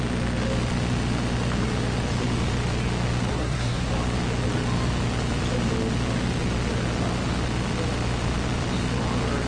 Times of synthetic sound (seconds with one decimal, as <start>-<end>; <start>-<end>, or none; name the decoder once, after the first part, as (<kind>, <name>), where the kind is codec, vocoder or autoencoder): 3.3-3.9 (codec, SNAC)

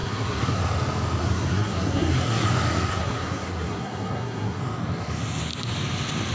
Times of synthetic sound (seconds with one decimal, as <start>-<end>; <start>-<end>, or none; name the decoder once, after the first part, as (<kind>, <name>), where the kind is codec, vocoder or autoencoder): 0.0-0.6 (codec, SNAC); 1.2-2.5; 2.9-4.6

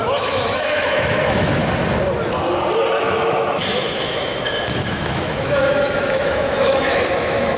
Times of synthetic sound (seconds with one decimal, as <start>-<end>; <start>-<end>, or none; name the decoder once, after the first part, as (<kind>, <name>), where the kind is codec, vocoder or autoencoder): 0.0-1.6 (autoencoder, DAC-VAE); 3.0-7.6

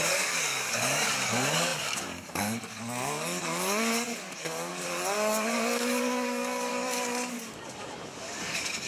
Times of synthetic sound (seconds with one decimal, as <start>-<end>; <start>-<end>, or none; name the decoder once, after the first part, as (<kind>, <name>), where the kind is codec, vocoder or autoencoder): 0.0-8.9 (codec, DAC)

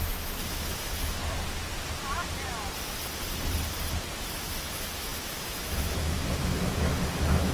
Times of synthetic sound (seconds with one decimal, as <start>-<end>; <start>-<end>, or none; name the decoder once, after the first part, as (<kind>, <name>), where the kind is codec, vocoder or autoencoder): 0.0-1.2 (autoencoder, DAC-VAE); 4.1-7.5

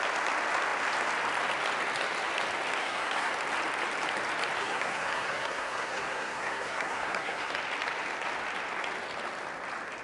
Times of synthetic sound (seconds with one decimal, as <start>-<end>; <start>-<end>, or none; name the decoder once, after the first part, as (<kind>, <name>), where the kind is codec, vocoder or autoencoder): 2.8-3.3 (codec, SNAC); 4.6-7.5

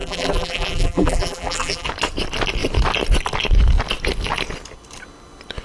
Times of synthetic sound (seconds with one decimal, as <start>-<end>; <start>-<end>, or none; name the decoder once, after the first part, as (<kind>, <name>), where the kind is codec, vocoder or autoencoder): 0.0-1.9 (vocoder, BigVGAN v2)